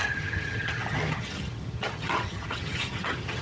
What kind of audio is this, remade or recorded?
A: remade